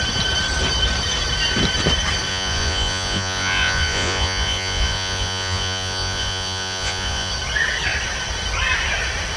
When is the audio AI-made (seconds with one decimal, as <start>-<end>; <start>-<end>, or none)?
2.3-7.3